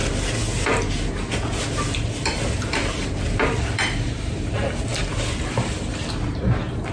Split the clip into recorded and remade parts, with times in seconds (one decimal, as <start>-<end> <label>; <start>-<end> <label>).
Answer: 0.0-6.9 recorded